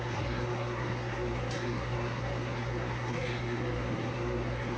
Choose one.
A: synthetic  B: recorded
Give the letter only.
A